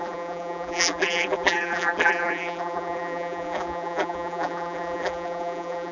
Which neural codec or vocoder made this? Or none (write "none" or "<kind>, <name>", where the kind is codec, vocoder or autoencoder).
vocoder, BigVGAN v2